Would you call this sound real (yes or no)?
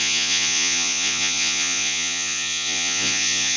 no